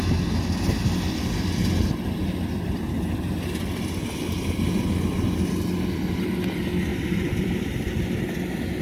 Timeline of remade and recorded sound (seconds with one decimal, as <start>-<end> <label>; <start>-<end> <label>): 0.0-2.2 recorded; 2.2-3.3 remade; 3.3-6.9 recorded; 6.9-7.9 remade; 7.9-8.8 recorded